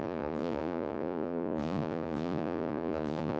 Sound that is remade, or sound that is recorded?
remade